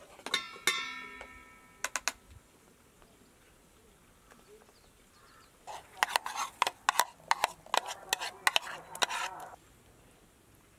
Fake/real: real